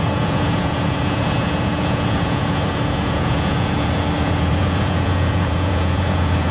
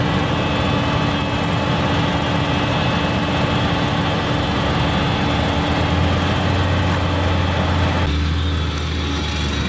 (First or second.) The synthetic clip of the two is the first